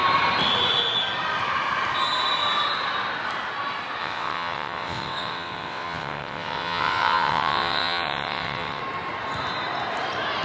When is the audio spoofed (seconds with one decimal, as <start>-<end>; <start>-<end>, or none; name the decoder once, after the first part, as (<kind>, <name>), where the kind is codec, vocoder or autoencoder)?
4.0-8.8 (vocoder, WaveNeXt)